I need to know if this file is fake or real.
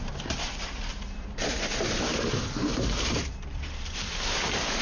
fake